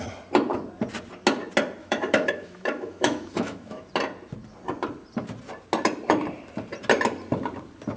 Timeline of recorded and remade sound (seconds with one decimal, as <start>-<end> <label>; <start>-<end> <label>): 0.0-1.8 recorded; 1.8-3.9 remade; 3.9-8.0 recorded